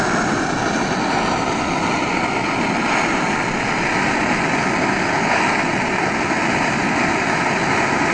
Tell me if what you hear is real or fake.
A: real